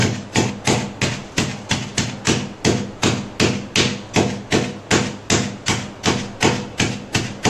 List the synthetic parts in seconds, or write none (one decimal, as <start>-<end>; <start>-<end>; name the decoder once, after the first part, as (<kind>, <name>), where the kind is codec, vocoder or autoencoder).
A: 0.0-0.5 (codec, DAC)